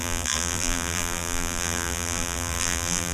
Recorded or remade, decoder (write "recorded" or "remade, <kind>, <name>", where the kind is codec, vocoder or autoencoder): remade, vocoder, BigVGAN v2